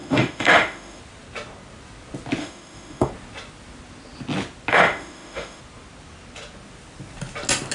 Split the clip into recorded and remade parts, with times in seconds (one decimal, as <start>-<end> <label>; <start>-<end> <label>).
0.0-1.0 remade; 1.0-2.4 recorded; 2.4-3.1 remade; 3.1-4.7 recorded; 4.7-5.6 remade; 5.6-7.7 recorded